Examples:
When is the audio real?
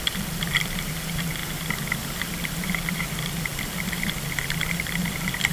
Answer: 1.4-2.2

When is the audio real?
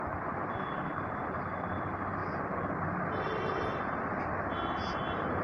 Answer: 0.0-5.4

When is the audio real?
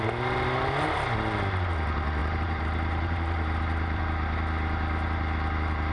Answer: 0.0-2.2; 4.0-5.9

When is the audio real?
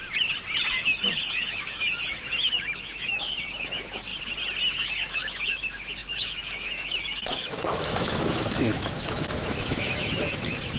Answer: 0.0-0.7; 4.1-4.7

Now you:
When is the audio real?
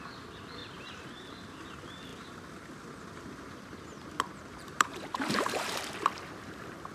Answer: 0.0-0.6; 1.3-4.4; 5.7-6.9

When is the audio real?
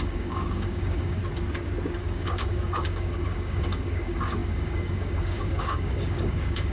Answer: 1.2-2.0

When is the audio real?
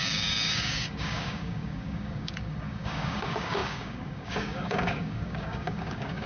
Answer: none